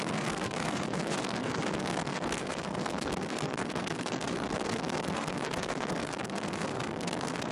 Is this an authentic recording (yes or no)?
no